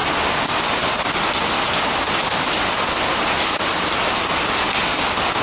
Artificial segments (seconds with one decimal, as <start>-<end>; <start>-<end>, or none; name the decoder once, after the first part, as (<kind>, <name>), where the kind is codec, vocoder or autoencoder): none